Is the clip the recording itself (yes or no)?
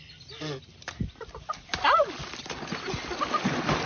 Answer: yes